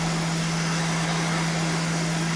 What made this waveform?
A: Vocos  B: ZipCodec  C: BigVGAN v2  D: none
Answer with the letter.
D